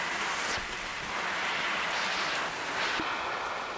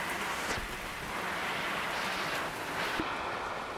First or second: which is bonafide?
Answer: first